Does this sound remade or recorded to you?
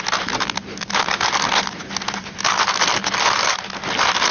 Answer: recorded